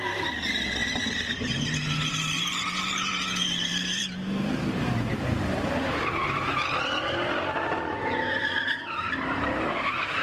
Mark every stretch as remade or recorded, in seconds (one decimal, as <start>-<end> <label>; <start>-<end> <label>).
0.0-10.2 remade

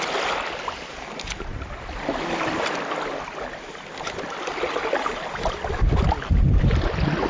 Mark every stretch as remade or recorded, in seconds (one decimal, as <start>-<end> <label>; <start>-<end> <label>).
0.0-7.3 recorded

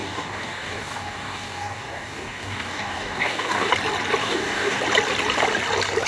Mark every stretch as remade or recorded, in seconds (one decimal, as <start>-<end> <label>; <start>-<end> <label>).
0.0-3.7 remade; 3.7-4.2 recorded; 4.2-4.8 remade; 4.8-6.1 recorded